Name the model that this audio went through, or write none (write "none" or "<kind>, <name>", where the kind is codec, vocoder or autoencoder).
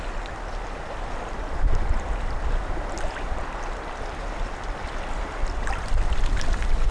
vocoder, BigVGAN v2